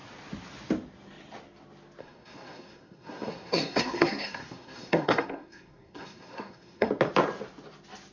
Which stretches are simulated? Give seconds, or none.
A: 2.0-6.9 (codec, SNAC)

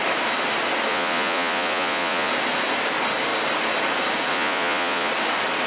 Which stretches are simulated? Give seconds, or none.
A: 0.9-2.3 (vocoder, Vocos); 4.3-5.1

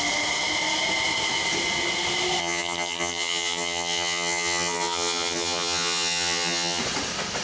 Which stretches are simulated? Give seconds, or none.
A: 2.4-6.8 (vocoder, HiFi-GAN)

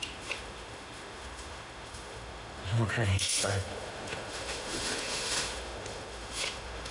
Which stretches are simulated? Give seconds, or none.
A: 0.0-6.9 (autoencoder, DAC-VAE)

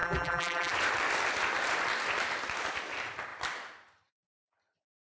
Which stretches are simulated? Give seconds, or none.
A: 0.0-0.7 (vocoder, BigVGAN v2)

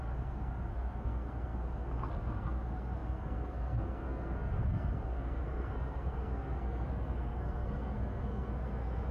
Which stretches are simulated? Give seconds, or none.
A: 0.0-9.1 (codec, SNAC)